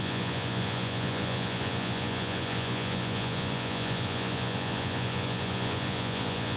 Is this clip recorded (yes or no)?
no